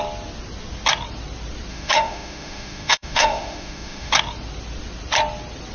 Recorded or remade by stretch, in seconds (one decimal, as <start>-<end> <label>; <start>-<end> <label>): 0.0-1.7 recorded; 1.7-4.1 remade; 4.1-5.7 recorded